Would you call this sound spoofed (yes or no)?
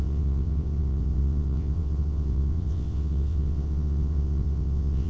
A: yes